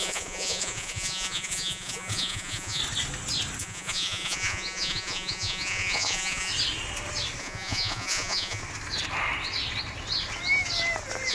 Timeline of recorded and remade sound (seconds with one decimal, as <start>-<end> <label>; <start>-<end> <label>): 0.0-2.8 remade; 2.8-3.6 recorded; 3.6-6.5 remade; 6.5-7.4 recorded; 7.4-8.6 remade; 8.6-11.3 recorded